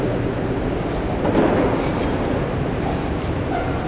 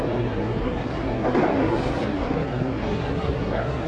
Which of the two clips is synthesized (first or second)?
second